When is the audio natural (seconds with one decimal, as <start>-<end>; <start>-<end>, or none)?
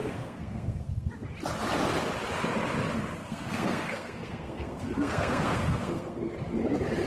1.1-3.2; 6.3-7.1